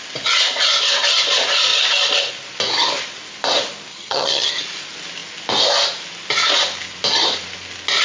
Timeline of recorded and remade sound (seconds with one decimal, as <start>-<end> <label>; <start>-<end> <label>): 0.0-3.9 recorded; 3.9-4.5 remade; 4.5-8.0 recorded